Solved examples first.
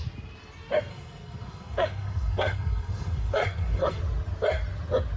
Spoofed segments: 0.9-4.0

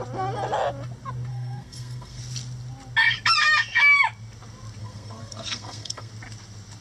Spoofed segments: 1.3-2.2; 4.8-6.1

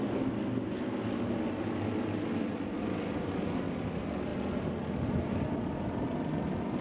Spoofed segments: none

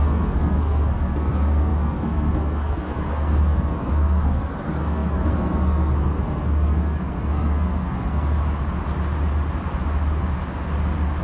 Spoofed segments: 0.0-8.6

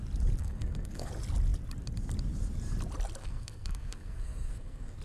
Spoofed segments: 0.4-1.1; 3.2-5.0

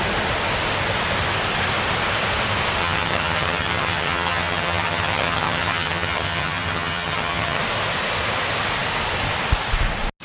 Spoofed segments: 2.8-7.6